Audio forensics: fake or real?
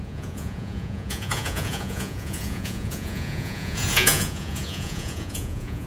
fake